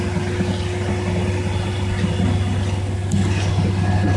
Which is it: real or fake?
real